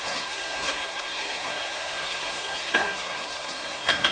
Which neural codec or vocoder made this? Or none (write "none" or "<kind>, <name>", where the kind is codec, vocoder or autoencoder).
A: codec, SNAC